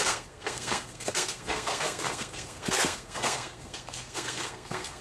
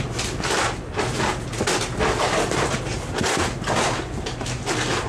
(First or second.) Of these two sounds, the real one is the second